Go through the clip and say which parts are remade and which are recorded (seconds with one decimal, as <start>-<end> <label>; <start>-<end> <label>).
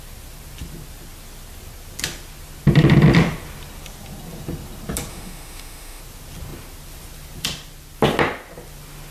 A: 0.0-5.1 recorded; 5.1-6.0 remade; 6.0-9.1 recorded